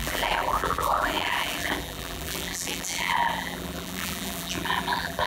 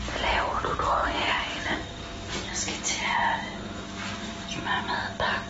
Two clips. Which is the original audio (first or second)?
second